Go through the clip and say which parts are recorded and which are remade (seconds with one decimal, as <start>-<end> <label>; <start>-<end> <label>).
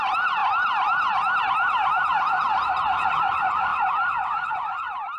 0.0-0.4 remade; 0.4-1.4 recorded; 1.4-3.7 remade; 3.7-4.5 recorded; 4.5-5.2 remade